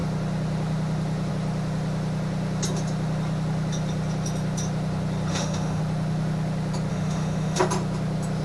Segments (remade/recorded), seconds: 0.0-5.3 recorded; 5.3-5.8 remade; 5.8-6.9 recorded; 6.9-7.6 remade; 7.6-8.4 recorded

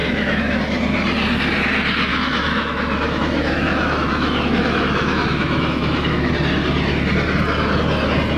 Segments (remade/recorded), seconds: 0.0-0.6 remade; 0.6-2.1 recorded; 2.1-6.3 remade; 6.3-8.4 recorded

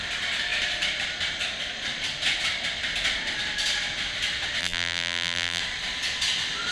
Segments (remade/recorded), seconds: 0.0-4.6 recorded; 4.6-5.6 remade; 5.6-6.7 recorded

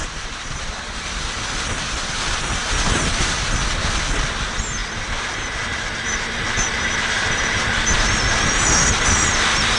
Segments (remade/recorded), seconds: 0.0-1.1 remade; 1.1-2.6 recorded; 2.6-3.3 remade; 3.3-4.8 recorded; 4.8-9.4 remade; 9.4-9.8 recorded